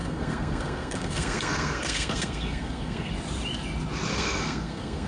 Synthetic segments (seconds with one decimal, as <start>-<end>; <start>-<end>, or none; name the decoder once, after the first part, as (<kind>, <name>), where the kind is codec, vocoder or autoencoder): 0.0-3.1 (codec, SNAC); 4.1-5.1